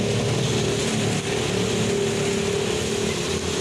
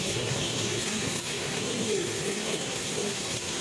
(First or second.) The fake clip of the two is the second